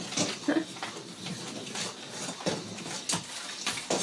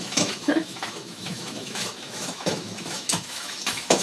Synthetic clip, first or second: second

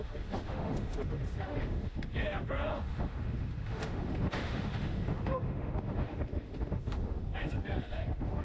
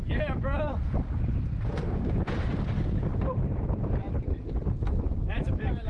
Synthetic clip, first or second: first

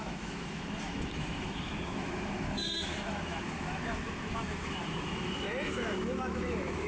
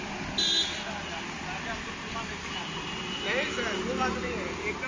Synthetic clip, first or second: first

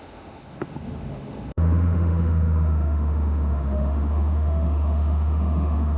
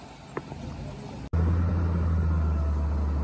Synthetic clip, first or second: first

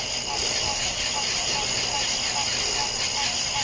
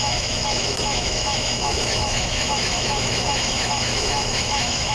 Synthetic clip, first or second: second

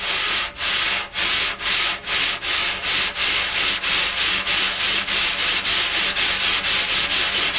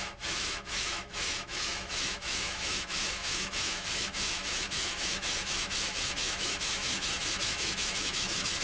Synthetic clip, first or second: second